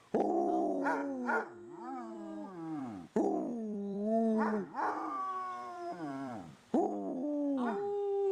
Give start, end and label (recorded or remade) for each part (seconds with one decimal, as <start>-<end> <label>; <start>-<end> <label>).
0.0-1.0 recorded; 1.0-2.8 remade; 2.8-3.5 recorded; 3.5-6.5 remade; 6.5-8.3 recorded

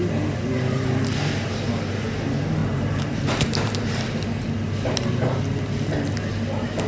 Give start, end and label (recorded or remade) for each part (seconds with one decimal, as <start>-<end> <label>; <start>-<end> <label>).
0.0-2.6 recorded; 2.6-4.0 remade; 4.0-6.9 recorded

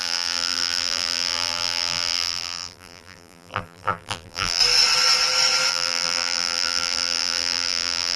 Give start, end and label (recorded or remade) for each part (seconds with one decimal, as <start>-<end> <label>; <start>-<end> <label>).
0.0-4.6 remade; 4.6-5.7 recorded; 5.7-8.2 remade

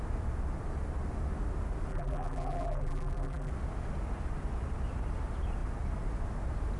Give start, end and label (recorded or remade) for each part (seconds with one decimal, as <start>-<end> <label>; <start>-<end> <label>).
0.0-1.9 recorded; 1.9-3.5 remade; 3.5-6.8 recorded

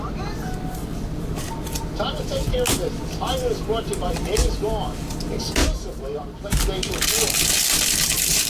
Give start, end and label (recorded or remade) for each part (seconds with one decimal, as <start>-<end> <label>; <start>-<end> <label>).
0.0-5.6 recorded; 5.6-6.6 remade; 6.6-8.5 recorded

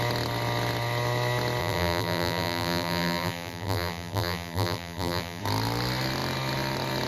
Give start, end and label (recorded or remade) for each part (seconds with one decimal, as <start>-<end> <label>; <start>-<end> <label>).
0.0-1.6 recorded; 1.6-5.4 remade; 5.4-7.1 recorded

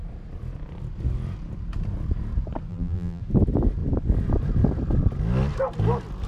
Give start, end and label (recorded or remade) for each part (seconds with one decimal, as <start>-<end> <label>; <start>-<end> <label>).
0.0-2.7 recorded; 2.7-3.2 remade; 3.2-6.3 recorded

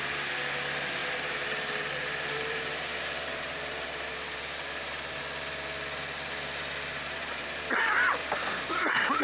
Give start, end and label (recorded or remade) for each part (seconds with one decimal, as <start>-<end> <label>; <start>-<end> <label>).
0.0-1.0 recorded; 1.0-5.2 remade; 5.2-6.9 recorded; 6.9-7.6 remade; 7.6-8.2 recorded; 8.2-9.2 remade